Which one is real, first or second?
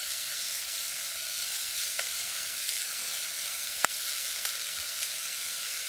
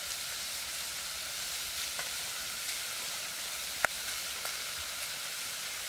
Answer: second